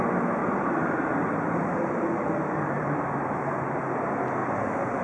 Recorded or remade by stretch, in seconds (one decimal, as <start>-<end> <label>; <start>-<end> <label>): 0.0-0.4 recorded; 0.4-3.4 remade; 3.4-5.0 recorded